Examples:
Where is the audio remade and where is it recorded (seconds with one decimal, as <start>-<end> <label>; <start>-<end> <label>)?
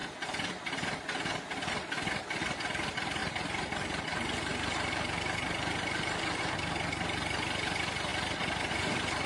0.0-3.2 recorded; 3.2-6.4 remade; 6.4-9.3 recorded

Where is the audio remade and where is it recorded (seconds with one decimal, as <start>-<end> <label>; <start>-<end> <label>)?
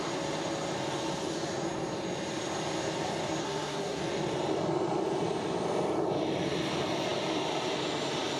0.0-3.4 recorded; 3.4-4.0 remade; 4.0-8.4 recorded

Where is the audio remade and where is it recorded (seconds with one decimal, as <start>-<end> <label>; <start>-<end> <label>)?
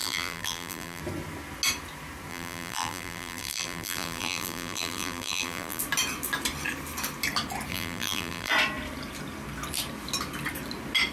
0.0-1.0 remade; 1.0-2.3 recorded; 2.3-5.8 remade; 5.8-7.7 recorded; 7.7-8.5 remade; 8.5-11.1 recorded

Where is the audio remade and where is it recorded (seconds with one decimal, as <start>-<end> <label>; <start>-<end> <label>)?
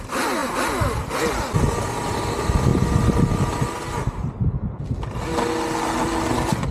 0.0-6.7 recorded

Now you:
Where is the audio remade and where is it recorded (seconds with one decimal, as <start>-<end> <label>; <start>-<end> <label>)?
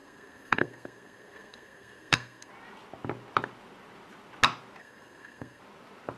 0.0-2.5 remade; 2.5-4.8 recorded; 4.8-5.6 remade; 5.6-6.2 recorded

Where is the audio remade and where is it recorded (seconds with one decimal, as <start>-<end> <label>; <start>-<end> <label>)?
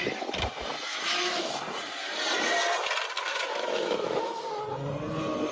0.0-0.9 recorded; 0.9-1.5 remade; 1.5-3.3 recorded; 3.3-4.4 remade; 4.4-5.5 recorded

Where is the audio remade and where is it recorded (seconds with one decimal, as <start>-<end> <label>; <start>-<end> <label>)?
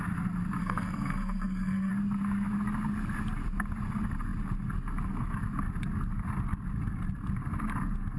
0.0-0.6 recorded; 0.6-1.9 remade; 1.9-8.2 recorded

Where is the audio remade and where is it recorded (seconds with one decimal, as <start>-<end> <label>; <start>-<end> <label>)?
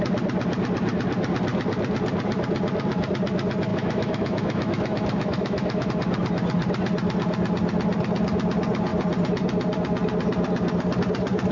0.0-3.7 recorded; 3.7-5.9 remade; 5.9-11.5 recorded